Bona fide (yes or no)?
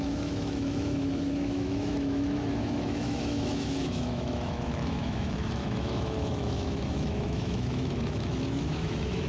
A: no